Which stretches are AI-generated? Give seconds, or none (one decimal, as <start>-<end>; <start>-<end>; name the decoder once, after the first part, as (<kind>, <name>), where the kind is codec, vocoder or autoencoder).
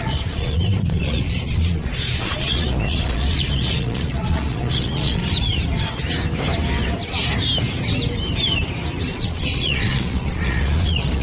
0.0-5.2 (vocoder, Vocos); 9.1-11.2